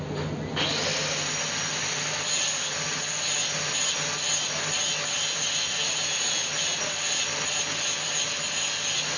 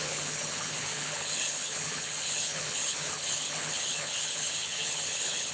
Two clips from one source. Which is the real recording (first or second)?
first